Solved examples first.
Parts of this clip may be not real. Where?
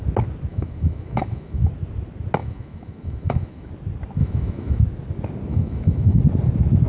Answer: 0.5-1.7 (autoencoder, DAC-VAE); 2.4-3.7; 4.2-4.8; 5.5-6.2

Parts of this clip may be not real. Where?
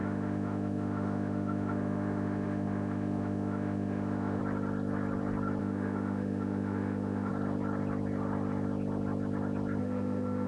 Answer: 0.0-4.4 (autoencoder, DAC-VAE); 5.6-7.3; 9.8-10.5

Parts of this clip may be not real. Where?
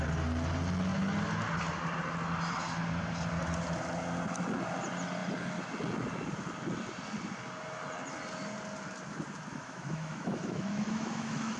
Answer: 9.5-11.6 (autoencoder, DAC-VAE)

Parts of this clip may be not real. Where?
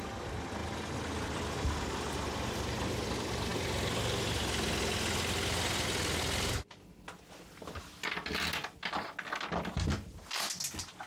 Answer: none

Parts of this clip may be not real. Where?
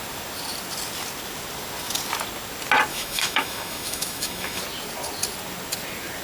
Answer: 2.9-4.6 (autoencoder, DAC-VAE)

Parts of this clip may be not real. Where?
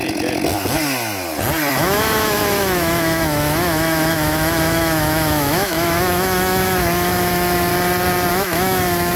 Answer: 1.7-7.7 (autoencoder, DAC-VAE); 8.3-9.2